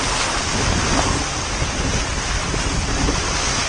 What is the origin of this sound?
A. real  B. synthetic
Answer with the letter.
A